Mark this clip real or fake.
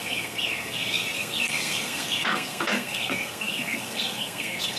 fake